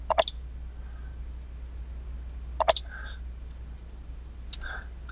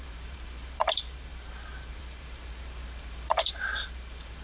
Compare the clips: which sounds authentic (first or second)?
first